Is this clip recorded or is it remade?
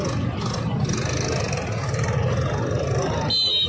recorded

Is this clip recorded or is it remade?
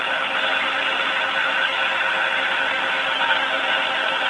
recorded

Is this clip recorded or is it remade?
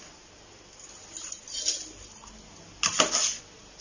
recorded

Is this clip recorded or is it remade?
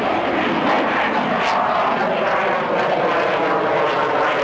recorded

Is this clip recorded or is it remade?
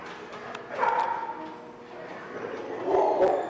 recorded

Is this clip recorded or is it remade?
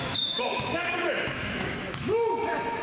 remade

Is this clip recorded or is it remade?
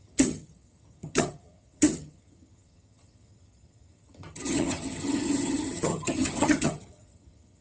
remade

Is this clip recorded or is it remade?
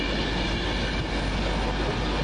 recorded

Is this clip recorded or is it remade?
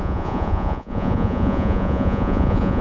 remade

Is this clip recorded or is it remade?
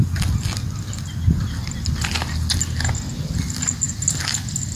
recorded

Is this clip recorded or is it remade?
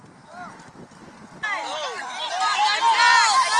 recorded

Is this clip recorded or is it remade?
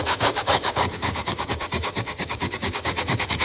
remade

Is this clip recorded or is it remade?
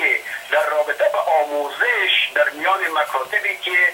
recorded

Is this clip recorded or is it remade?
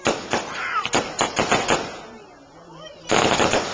recorded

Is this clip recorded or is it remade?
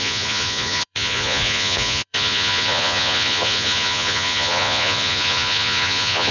remade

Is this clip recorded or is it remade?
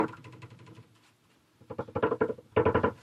recorded